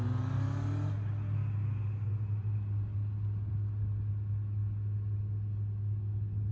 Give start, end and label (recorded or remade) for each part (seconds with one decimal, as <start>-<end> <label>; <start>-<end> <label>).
0.0-6.5 recorded